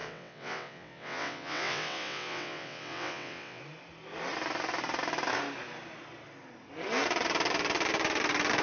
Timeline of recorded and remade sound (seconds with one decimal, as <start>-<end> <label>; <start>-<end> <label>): 0.0-3.6 remade; 3.6-8.6 recorded